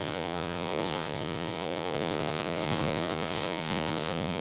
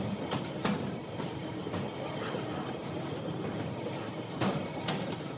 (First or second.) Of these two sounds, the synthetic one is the first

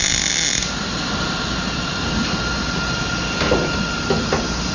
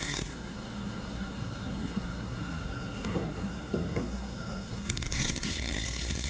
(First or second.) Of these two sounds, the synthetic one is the second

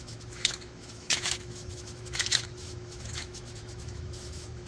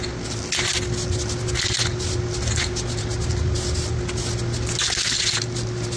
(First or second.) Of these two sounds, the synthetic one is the first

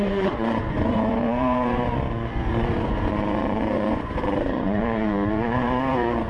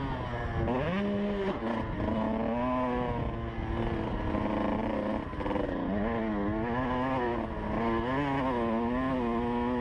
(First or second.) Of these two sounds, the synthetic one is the first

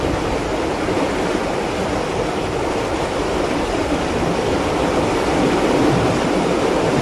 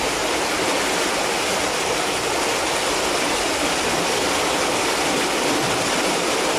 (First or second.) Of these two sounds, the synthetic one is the first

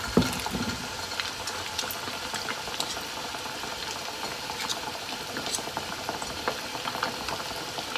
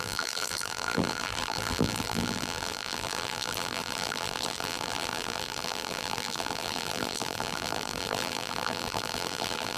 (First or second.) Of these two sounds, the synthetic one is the second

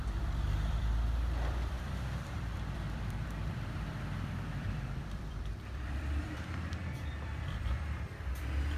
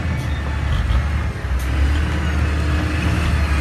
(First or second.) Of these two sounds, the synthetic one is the first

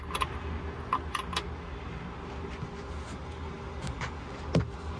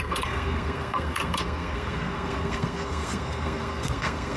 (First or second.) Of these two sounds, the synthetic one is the second